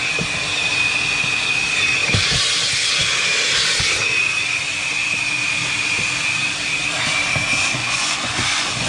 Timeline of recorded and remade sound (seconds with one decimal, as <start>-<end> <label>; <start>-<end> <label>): 0.0-7.8 recorded; 7.8-8.9 remade